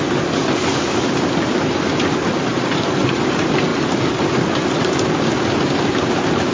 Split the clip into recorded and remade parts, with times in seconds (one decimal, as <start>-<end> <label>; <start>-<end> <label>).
0.0-2.5 recorded; 2.5-3.2 remade; 3.2-6.5 recorded